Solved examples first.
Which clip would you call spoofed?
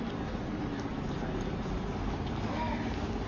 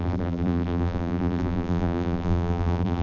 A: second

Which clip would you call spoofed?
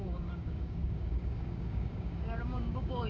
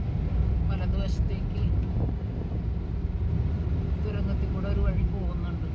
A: first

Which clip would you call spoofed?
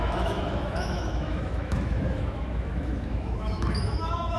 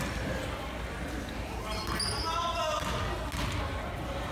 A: first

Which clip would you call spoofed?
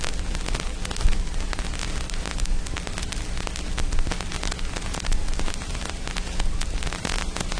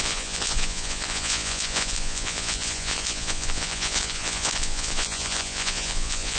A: second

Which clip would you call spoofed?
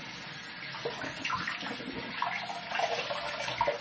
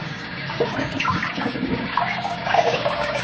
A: second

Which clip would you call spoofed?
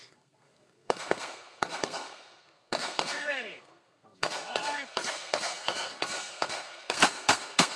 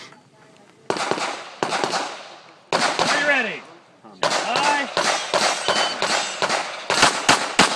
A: first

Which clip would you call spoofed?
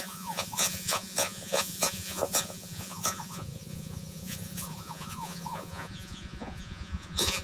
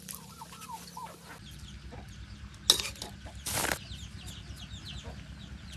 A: first